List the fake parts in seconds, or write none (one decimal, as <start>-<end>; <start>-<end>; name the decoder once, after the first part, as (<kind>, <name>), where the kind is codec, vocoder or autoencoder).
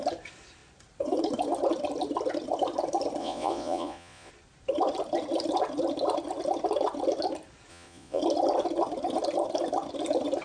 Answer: 3.2-4.3 (vocoder, Vocos); 7.7-8.2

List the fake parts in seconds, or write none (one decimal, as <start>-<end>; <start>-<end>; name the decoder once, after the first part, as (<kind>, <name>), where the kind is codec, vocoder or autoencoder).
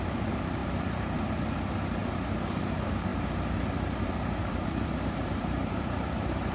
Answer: 0.0-2.0 (vocoder, BigVGAN v2); 2.5-6.5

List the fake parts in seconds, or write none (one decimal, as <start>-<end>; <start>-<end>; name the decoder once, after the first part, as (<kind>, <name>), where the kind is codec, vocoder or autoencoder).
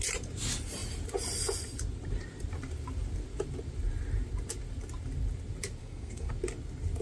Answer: 5.8-6.3 (codec, SNAC)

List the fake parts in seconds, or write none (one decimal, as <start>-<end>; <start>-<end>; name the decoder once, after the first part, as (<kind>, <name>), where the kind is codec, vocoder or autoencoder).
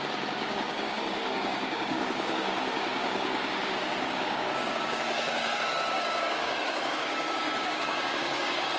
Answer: 0.0-8.8 (codec, DAC)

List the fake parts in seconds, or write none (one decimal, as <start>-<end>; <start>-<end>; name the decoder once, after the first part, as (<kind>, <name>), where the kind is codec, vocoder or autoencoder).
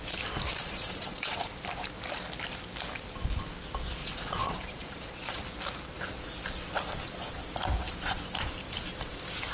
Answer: 0.6-1.6 (vocoder, Vocos); 4.0-5.4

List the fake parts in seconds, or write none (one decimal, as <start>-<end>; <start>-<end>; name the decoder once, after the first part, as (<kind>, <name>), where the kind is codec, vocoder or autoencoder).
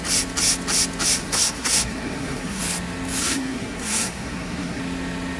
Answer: 1.2-2.6 (codec, SNAC); 3.2-4.8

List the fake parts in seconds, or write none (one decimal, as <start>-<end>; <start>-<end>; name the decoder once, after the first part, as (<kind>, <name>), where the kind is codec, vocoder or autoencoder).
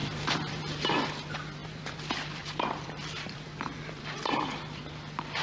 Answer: 0.0-0.6 (vocoder, BigVGAN v2); 1.6-4.8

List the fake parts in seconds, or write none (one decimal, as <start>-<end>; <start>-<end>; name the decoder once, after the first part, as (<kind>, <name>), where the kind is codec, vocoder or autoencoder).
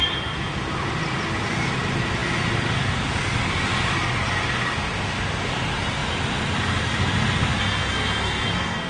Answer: 7.6-8.9 (codec, SNAC)